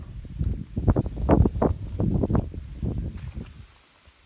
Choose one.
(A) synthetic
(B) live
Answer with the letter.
B